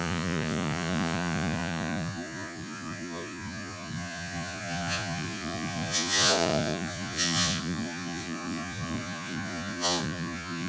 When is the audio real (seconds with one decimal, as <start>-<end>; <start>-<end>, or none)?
none